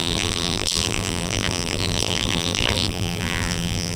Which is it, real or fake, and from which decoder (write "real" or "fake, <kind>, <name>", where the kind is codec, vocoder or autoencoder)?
fake, vocoder, BigVGAN v2